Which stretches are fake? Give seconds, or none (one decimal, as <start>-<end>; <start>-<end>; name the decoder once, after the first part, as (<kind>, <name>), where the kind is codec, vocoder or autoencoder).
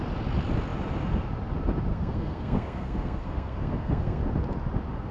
1.9-4.2 (codec, SNAC)